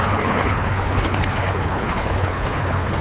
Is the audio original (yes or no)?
no